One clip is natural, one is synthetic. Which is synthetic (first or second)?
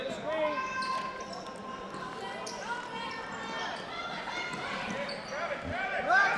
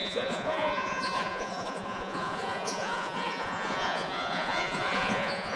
second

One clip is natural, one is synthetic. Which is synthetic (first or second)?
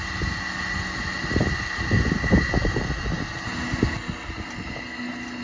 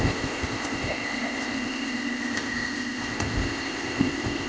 second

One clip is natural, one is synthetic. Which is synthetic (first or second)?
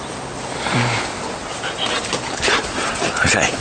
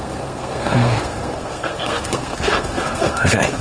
second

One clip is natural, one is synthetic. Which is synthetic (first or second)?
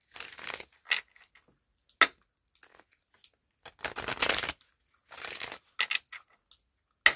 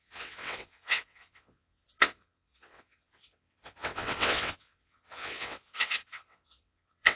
second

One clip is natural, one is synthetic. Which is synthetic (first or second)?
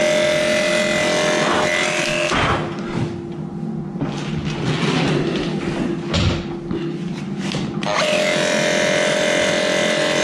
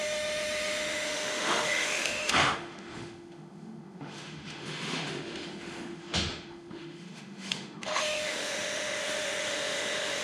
second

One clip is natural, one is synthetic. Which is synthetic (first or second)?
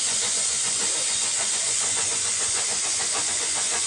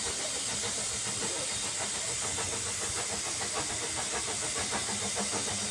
first